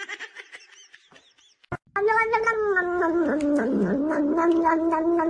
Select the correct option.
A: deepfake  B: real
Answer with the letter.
B